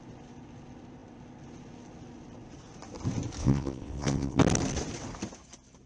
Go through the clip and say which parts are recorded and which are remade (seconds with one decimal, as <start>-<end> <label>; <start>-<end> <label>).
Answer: 0.0-3.4 recorded; 3.4-4.4 remade; 4.4-5.9 recorded